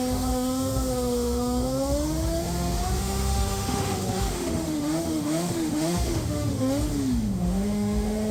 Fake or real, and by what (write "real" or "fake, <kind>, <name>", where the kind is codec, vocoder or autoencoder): fake, autoencoder, DAC-VAE